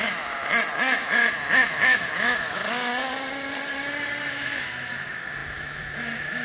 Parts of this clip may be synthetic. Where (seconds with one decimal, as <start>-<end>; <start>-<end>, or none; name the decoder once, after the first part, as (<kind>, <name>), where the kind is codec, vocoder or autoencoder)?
0.0-0.5 (autoencoder, DAC-VAE); 1.0-2.6; 4.3-6.4

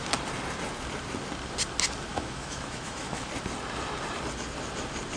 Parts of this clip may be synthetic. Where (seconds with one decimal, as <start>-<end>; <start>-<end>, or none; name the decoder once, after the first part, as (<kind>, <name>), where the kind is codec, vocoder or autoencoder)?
2.1-3.3 (autoencoder, DAC-VAE)